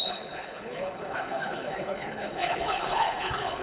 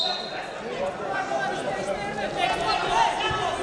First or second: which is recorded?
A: second